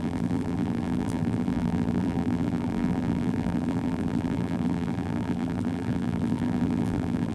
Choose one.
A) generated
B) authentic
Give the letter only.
A